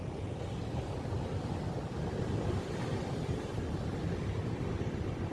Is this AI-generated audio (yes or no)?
no